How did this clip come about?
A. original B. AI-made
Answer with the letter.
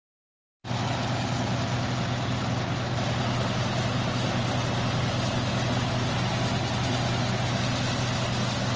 A